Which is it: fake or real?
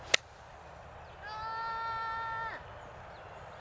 real